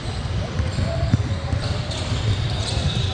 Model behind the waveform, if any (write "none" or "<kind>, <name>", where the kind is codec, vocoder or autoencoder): vocoder, BigVGAN v2